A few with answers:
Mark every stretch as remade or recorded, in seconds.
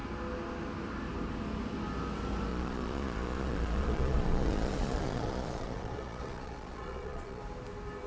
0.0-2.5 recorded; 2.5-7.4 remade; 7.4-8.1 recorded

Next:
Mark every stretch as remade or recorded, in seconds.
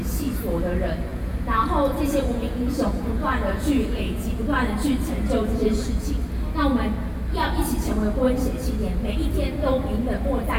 0.0-1.1 recorded; 1.1-4.4 remade; 4.4-5.6 recorded; 5.6-6.1 remade; 6.1-10.6 recorded